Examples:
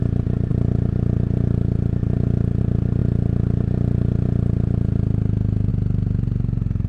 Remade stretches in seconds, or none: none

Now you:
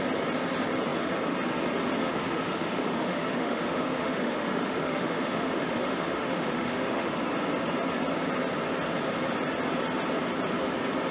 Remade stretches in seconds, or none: 2.0-7.1 (autoencoder, DAC-VAE)

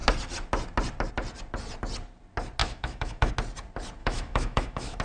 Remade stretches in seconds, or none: 2.6-3.3 (autoencoder, DAC-VAE); 4.0-5.0

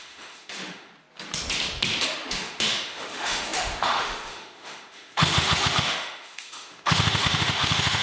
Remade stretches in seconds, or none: 0.0-0.9 (autoencoder, DAC-VAE); 2.0-8.0

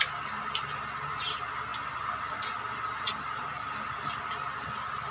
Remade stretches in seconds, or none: none